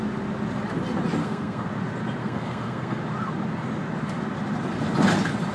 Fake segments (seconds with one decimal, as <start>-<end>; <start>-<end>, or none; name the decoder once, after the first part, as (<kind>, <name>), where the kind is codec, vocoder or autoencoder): 1.2-1.7 (codec, SNAC); 2.2-3.0